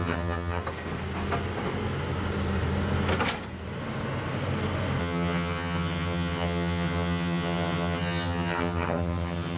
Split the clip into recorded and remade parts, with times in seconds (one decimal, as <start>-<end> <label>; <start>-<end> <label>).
0.0-0.6 remade; 0.6-5.0 recorded; 5.0-9.6 remade